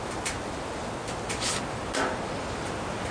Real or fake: real